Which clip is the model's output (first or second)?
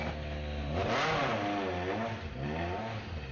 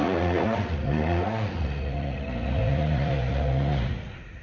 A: second